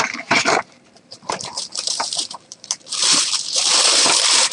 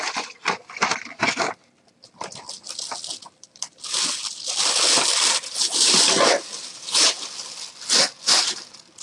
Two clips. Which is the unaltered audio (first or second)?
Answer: second